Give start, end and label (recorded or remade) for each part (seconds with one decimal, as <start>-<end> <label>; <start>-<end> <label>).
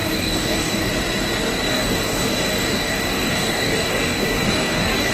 0.0-0.9 remade; 0.9-1.7 recorded; 1.7-5.1 remade